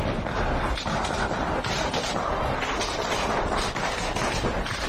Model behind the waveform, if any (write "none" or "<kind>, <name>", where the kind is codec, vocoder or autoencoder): none